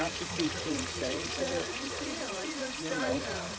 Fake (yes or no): yes